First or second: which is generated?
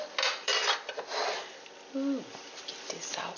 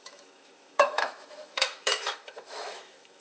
second